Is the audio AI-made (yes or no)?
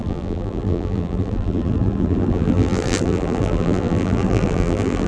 yes